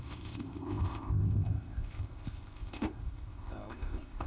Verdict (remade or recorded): remade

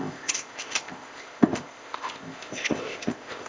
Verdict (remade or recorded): remade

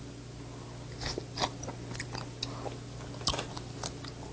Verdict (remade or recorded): recorded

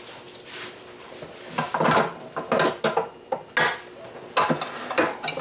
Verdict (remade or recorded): recorded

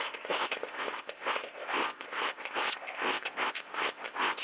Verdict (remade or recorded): remade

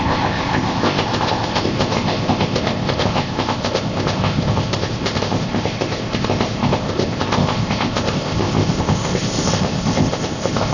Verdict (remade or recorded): remade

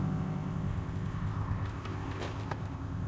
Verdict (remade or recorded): remade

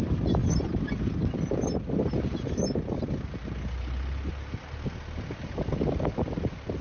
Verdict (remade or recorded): recorded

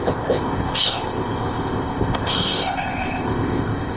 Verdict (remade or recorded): remade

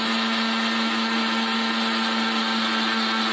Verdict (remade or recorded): recorded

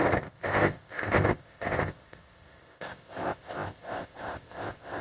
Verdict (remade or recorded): remade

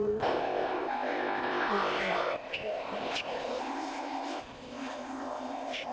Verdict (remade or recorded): remade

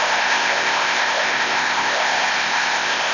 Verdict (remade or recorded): remade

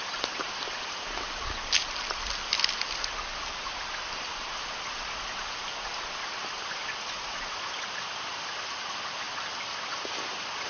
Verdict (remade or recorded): recorded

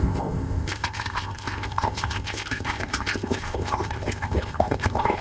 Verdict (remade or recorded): remade